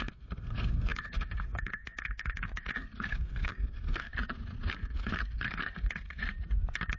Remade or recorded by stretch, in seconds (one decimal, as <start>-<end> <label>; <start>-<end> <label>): 0.0-4.1 remade; 4.1-4.7 recorded; 4.7-6.2 remade; 6.2-7.0 recorded